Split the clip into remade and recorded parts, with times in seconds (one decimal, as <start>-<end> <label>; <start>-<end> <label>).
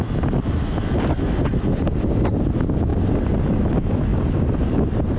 0.0-2.9 recorded; 2.9-3.6 remade; 3.6-4.1 recorded; 4.1-4.6 remade; 4.6-5.2 recorded